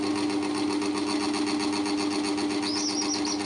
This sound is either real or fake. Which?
real